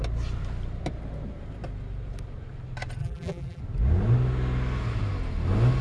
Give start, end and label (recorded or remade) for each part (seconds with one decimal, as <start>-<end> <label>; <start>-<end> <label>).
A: 0.0-3.0 recorded; 3.0-3.6 remade; 3.6-5.8 recorded

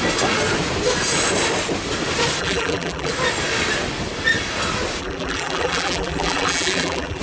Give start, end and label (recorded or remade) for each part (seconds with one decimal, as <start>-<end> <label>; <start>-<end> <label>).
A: 0.0-2.4 recorded; 2.4-3.1 remade; 3.1-5.0 recorded; 5.0-7.2 remade

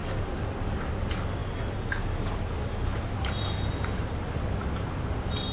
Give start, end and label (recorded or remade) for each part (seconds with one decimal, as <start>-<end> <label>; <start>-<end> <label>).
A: 0.0-0.9 remade; 0.9-5.5 recorded

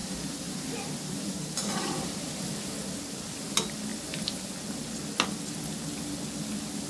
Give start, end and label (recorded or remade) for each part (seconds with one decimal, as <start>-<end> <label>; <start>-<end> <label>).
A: 0.0-2.4 remade; 2.4-3.9 recorded; 3.9-4.5 remade; 4.5-6.9 recorded

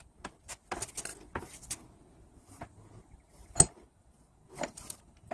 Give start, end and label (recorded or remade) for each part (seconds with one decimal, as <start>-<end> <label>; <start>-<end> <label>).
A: 0.0-5.3 recorded

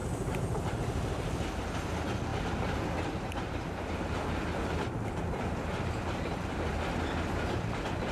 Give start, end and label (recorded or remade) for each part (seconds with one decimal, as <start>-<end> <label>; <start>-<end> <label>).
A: 0.0-2.3 recorded; 2.3-6.7 remade; 6.7-8.1 recorded